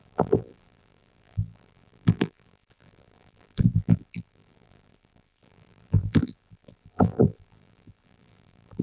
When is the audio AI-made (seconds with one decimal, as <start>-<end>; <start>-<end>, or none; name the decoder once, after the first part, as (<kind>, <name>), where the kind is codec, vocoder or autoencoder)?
0.0-8.8 (vocoder, BigVGAN v2)